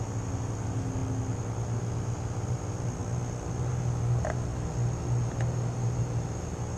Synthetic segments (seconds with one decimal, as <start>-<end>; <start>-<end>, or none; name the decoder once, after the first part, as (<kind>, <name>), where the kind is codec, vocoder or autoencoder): none